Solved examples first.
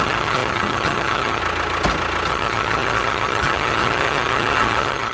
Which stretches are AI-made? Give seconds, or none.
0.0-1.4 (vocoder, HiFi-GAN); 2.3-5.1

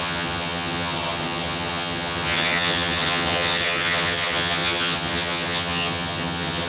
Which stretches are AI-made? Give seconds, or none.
0.0-6.7 (vocoder, HiFi-GAN)